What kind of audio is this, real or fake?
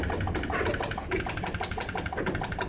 real